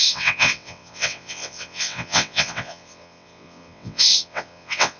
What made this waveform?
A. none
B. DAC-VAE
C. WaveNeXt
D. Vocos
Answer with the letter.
C